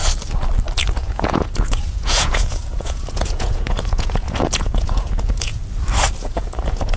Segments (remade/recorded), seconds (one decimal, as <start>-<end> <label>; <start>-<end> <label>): 0.0-0.8 recorded; 0.8-5.6 remade; 5.6-6.2 recorded; 6.2-7.0 remade